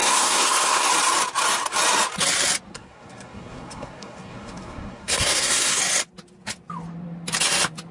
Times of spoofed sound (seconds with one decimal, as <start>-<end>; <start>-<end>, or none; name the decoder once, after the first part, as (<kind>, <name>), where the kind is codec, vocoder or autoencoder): 0.0-0.9 (codec, SNAC); 2.7-5.8